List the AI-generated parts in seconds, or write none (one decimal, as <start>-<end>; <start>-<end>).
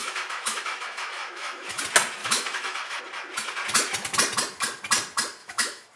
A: 0.0-1.8; 2.2-3.0; 5.4-6.0